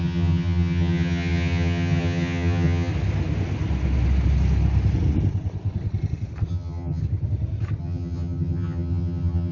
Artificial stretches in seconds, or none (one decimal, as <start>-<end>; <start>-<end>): 0.0-2.9; 6.5-7.0; 7.8-9.5